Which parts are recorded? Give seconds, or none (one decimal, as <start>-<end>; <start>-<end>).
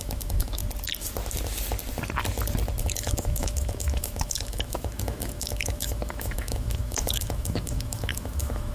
0.6-2.8